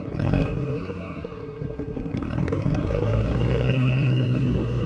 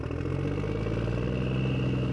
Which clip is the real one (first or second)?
second